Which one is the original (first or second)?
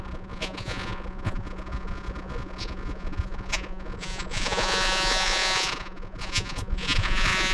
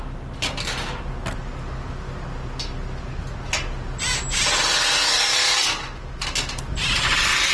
second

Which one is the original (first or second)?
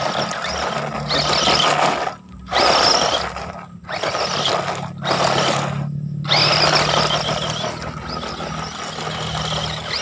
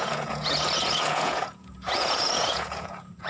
first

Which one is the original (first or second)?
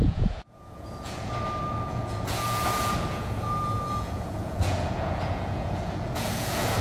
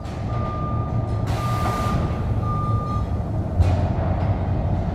second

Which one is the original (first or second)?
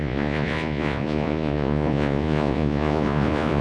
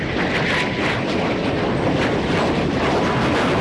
second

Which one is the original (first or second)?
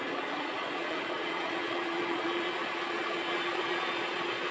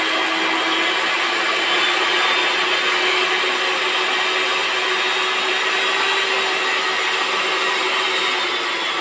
second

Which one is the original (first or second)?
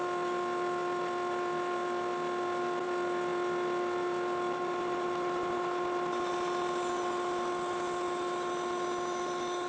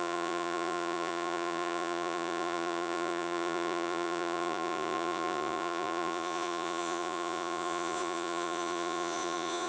first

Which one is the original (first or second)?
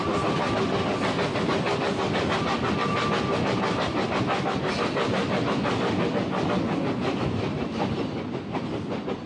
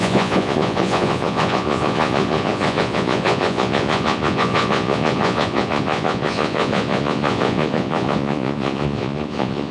first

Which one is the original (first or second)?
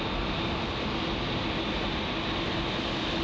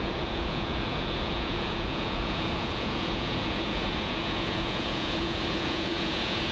first